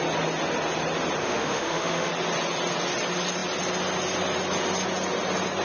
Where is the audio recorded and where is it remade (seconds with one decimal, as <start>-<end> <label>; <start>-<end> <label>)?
0.0-1.2 recorded; 1.2-2.1 remade; 2.1-5.6 recorded